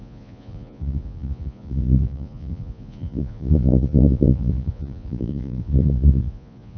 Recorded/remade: remade